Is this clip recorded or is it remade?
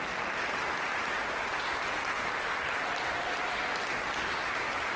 recorded